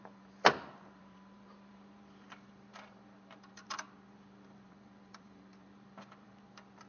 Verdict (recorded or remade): remade